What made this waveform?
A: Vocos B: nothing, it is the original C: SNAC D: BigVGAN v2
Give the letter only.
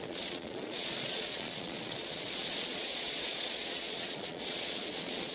A